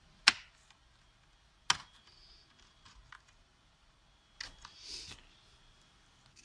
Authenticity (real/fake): real